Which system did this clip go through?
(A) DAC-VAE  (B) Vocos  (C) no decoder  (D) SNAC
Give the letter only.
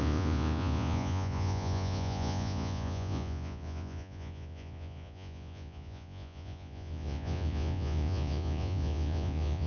B